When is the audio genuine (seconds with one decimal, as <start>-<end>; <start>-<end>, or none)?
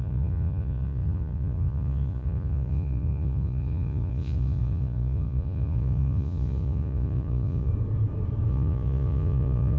7.7-8.5